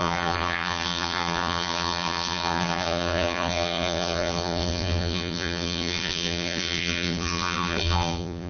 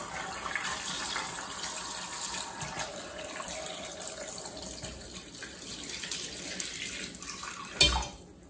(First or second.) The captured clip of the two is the second